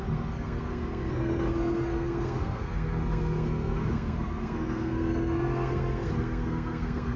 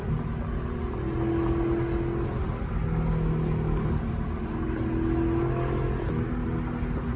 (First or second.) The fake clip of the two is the first